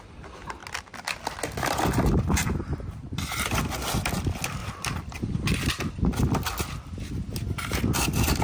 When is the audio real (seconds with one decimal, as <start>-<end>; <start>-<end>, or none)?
0.0-4.6; 5.7-8.4